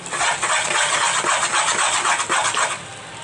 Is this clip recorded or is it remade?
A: recorded